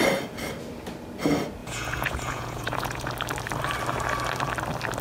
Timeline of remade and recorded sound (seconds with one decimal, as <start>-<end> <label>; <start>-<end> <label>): 0.0-1.6 recorded; 1.6-3.1 remade; 3.1-5.0 recorded